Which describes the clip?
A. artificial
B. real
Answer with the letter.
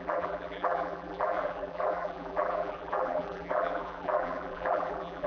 A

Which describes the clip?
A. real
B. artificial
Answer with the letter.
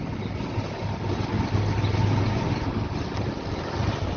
A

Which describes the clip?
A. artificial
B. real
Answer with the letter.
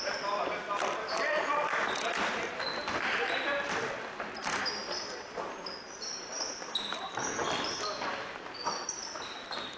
B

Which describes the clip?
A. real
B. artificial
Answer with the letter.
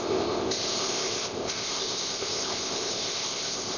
B